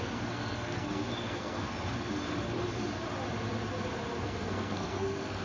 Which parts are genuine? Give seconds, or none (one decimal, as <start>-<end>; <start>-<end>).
1.7-4.2

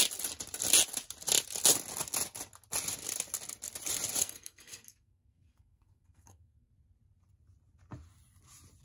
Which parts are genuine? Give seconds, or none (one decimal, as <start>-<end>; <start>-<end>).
0.0-4.2; 6.7-8.8

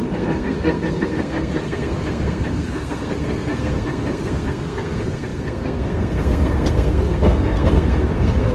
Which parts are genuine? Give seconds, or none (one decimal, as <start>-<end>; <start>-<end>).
none

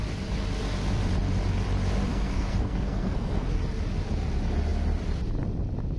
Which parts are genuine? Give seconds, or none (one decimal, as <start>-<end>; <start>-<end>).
0.0-2.1; 3.6-6.0

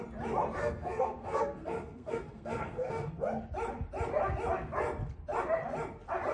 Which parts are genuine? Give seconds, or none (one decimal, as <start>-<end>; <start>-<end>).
0.0-0.6; 3.1-6.3

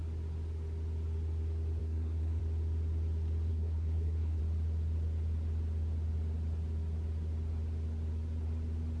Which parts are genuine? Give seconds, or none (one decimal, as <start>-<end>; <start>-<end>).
0.0-1.8; 2.4-3.5; 4.4-9.0

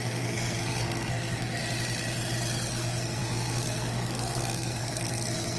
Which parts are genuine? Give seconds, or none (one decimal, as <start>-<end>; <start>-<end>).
1.6-2.7